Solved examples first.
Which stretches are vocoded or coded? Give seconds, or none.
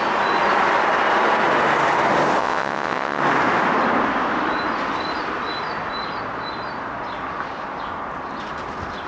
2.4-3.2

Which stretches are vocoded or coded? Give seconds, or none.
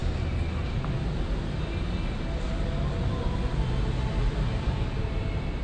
none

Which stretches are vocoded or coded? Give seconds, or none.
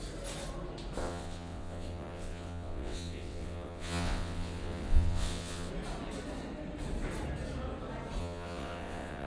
1.0-5.7; 8.2-9.3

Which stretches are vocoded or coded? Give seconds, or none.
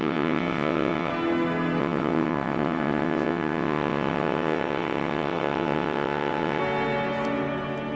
0.0-1.1; 1.8-6.6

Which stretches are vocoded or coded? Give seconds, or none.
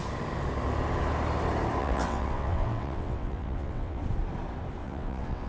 1.8-4.0; 4.8-5.5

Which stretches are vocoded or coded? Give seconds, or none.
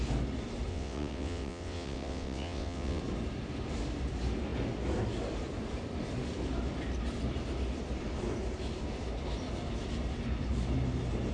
0.7-3.0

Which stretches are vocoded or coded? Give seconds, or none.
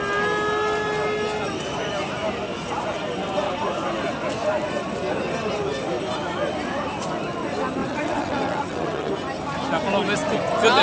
7.8-9.1